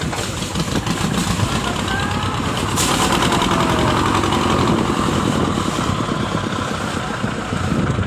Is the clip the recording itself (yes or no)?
no